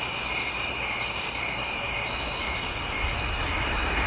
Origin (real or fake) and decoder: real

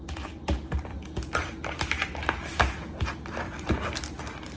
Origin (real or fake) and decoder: real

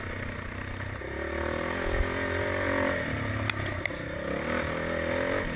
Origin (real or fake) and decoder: real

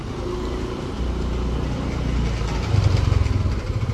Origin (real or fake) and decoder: real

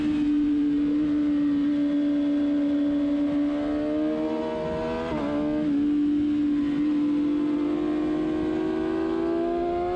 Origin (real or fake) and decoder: real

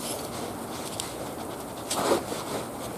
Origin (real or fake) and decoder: real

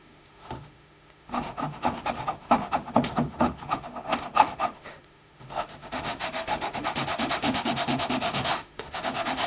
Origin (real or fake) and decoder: fake, autoencoder, DAC-VAE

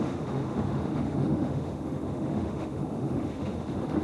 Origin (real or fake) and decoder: fake, autoencoder, DAC-VAE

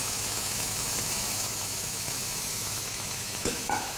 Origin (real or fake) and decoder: fake, autoencoder, DAC-VAE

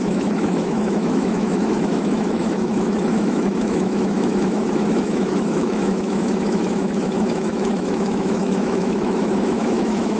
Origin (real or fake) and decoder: fake, autoencoder, DAC-VAE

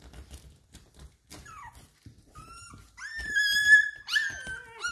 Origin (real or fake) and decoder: real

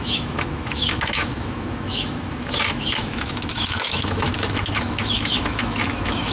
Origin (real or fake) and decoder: fake, autoencoder, DAC-VAE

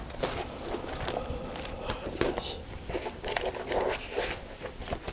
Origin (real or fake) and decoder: real